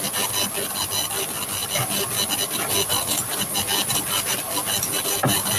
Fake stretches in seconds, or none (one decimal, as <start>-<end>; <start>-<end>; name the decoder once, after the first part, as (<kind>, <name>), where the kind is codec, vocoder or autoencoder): none